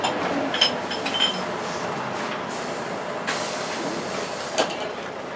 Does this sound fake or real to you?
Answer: real